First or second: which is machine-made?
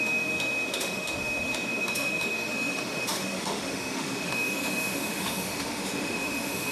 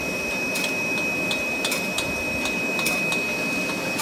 first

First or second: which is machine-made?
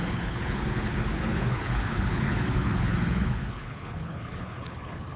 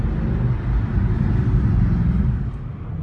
first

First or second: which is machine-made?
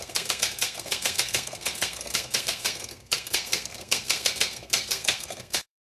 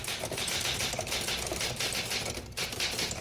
first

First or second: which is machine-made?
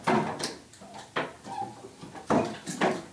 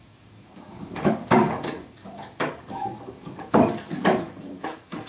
second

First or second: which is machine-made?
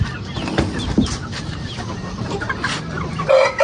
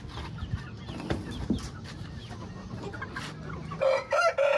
first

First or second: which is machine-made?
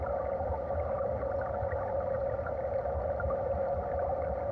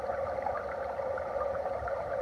second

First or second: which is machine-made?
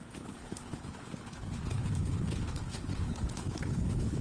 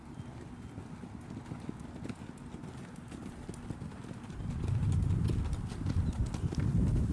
first